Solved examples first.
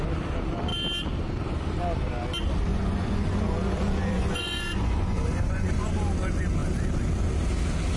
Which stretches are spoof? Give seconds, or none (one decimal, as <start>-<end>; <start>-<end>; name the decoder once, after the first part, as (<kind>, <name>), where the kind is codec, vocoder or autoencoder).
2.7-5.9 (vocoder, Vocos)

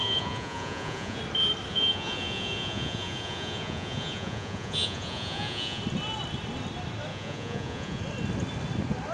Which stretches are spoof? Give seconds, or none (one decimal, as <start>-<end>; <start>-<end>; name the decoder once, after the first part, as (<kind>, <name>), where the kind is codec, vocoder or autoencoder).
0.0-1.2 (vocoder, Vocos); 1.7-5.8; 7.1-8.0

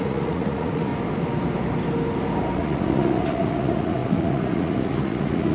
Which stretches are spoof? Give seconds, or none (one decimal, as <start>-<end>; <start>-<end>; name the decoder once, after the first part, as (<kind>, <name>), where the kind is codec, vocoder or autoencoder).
0.0-0.9 (vocoder, Vocos); 2.5-5.5